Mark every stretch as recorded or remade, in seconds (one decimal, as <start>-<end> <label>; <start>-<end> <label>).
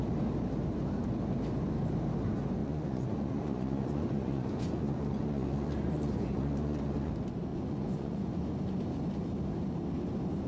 0.0-2.6 recorded; 2.6-7.1 remade; 7.1-7.5 recorded; 7.5-8.4 remade; 8.4-10.5 recorded